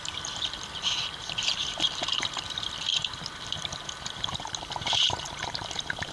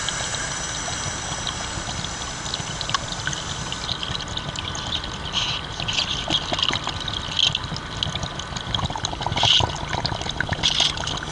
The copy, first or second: first